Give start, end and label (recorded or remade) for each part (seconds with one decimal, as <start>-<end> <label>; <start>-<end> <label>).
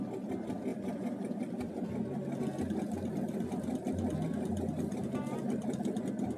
0.0-0.7 recorded; 0.7-1.7 remade; 1.7-6.4 recorded